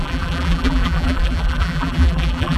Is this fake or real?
fake